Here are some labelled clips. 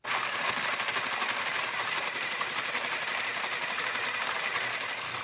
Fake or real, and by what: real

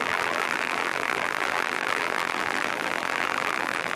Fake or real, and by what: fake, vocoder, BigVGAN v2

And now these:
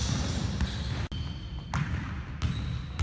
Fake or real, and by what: real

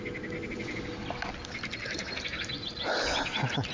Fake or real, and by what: real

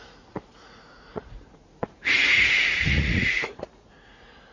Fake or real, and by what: fake, vocoder, Vocos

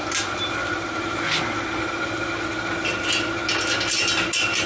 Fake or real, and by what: real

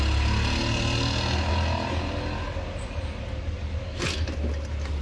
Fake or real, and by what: real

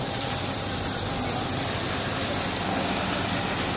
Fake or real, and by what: real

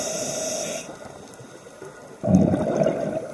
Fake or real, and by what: real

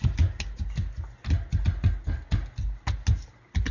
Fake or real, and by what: real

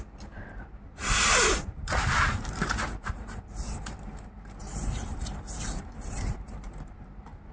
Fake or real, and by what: fake, vocoder, BigVGAN v2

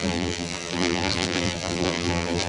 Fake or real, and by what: fake, vocoder, BigVGAN v2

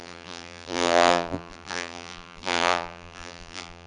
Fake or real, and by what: fake, vocoder, BigVGAN v2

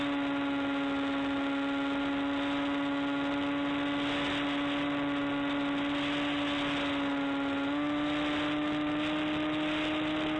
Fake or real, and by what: real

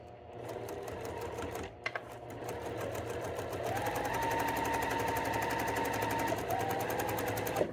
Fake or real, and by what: real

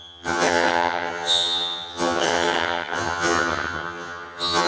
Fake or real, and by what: fake, vocoder, HiFi-GAN